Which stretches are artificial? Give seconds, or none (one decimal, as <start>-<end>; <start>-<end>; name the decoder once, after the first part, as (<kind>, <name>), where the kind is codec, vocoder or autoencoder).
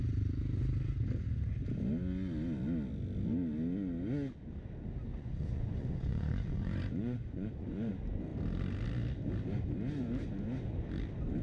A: 5.1-7.9 (vocoder, Vocos)